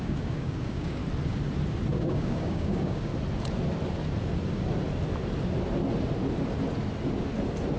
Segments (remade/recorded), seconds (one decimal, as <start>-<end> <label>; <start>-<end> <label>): 0.0-1.0 remade; 1.0-1.9 recorded; 1.9-3.1 remade; 3.1-7.8 recorded